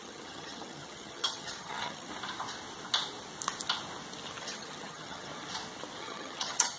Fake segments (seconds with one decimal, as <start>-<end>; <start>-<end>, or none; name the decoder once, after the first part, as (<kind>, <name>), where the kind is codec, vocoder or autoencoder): 0.0-2.1 (vocoder, HiFi-GAN); 4.4-5.3; 6.0-6.8